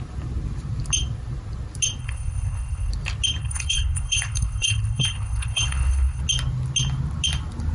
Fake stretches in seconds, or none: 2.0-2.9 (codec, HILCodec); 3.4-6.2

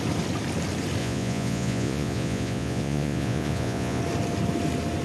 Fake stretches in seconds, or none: 1.0-4.0 (vocoder, Vocos)

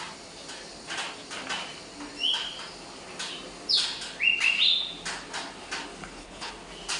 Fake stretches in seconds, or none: 6.0-6.5 (codec, HILCodec)

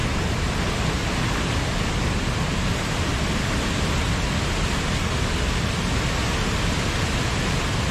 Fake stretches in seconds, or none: none